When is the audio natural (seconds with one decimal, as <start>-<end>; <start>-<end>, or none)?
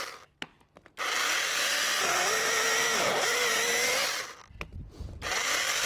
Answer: 0.0-5.9